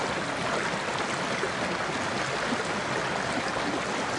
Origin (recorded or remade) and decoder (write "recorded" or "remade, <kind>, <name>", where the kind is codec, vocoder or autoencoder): recorded